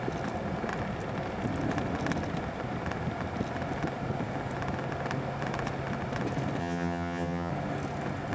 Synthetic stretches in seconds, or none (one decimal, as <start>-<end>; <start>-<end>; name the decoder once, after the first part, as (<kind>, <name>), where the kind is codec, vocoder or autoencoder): 6.6-7.5 (vocoder, HiFi-GAN)

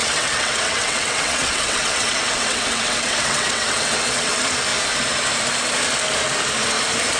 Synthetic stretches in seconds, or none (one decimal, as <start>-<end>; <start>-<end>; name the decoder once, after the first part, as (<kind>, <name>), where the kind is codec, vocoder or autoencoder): 0.0-4.3 (vocoder, WaveNeXt)

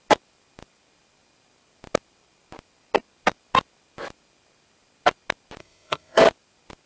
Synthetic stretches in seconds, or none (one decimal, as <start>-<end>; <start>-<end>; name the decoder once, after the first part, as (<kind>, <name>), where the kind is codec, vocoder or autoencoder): 5.6-6.2 (codec, SNAC)

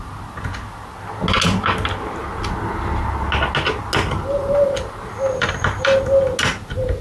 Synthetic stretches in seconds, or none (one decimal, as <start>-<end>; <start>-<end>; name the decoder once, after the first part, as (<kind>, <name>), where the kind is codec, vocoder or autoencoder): 4.4-6.0 (vocoder, BigVGAN v2)

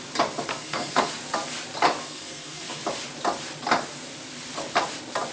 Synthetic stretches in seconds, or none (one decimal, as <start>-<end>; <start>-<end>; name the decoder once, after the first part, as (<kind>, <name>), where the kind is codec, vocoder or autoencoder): 0.5-1.1 (codec, SNAC); 2.0-2.8

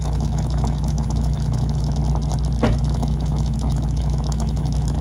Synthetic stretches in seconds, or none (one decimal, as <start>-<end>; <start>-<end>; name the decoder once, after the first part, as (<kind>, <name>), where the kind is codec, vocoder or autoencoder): 0.0-2.0 (autoencoder, DAC-VAE); 2.7-5.0

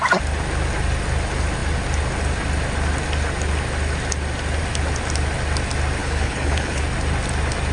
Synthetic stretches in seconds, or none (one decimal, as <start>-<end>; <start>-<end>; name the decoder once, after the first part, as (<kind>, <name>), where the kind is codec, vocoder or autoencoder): 6.0-6.8 (codec, HILCodec)